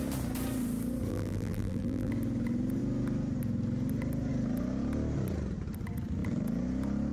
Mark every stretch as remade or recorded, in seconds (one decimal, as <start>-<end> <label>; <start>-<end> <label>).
0.0-1.1 recorded; 1.1-2.1 remade; 2.1-7.1 recorded